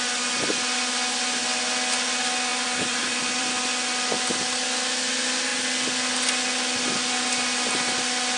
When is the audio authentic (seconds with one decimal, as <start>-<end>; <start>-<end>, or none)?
0.0-2.5; 3.5-8.4